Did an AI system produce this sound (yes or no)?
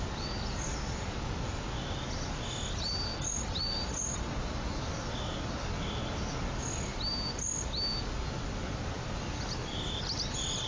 no